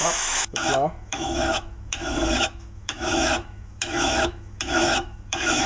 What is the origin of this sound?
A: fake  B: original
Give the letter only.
A